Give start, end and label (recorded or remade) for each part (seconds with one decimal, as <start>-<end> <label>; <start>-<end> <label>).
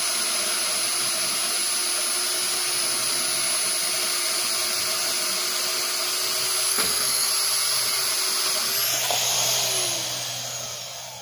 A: 0.0-6.7 recorded; 6.7-7.3 remade; 7.3-11.2 recorded